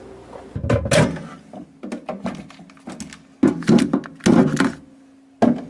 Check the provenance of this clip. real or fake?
real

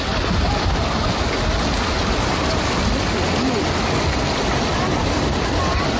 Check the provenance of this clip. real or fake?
real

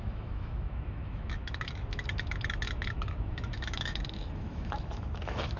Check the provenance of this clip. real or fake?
fake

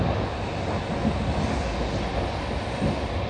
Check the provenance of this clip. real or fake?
real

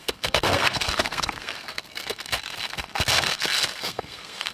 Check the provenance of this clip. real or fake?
fake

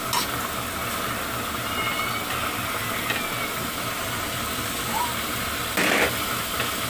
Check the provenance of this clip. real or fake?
real